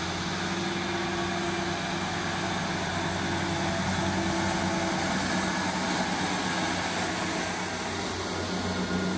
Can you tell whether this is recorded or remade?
recorded